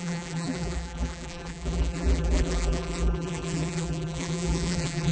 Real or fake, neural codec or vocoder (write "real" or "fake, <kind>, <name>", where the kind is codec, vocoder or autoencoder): fake, vocoder, BigVGAN v2